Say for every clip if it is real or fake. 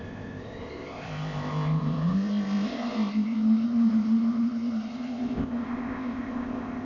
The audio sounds fake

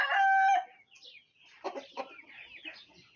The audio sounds real